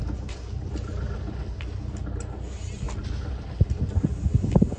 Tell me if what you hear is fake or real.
real